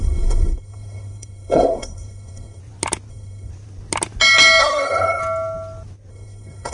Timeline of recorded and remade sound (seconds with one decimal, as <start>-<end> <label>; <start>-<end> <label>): 0.0-2.6 remade; 2.6-3.1 recorded; 3.1-3.5 remade; 3.5-4.6 recorded; 4.6-5.2 remade; 5.2-6.1 recorded; 6.1-6.7 remade